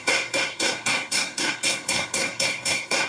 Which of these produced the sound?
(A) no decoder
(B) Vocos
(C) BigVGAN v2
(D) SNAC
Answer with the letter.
D